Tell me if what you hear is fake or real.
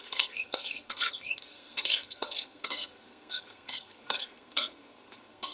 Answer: fake